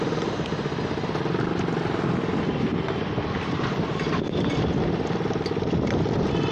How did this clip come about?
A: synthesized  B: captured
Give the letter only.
B